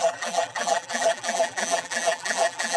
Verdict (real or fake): fake